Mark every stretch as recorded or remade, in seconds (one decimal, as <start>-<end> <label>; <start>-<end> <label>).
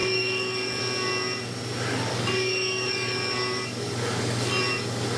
0.0-0.8 remade; 0.8-2.1 recorded; 2.1-5.2 remade